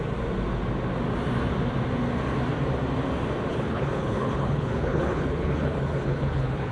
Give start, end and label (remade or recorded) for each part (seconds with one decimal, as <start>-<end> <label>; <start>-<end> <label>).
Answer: 0.0-3.5 recorded; 3.5-6.7 remade